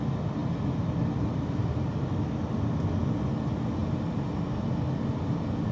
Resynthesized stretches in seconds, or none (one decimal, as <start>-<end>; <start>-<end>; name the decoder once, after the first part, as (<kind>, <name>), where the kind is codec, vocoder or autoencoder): none